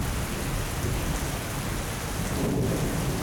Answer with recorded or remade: recorded